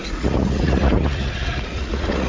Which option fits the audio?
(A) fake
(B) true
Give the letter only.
A